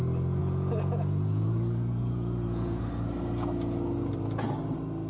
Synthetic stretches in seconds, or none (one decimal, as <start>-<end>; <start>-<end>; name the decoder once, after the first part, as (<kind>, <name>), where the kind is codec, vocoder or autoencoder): 0.4-2.8 (vocoder, Vocos)